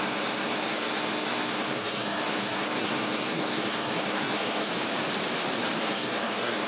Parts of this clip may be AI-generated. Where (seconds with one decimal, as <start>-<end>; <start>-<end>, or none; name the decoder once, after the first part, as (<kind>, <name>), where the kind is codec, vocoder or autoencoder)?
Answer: 0.0-4.7 (codec, SNAC); 5.8-6.7